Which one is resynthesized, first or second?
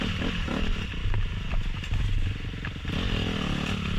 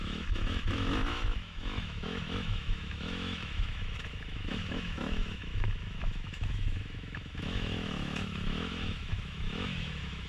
second